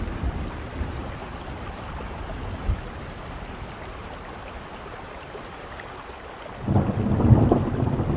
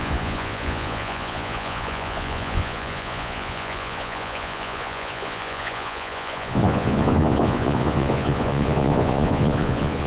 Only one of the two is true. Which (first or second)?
first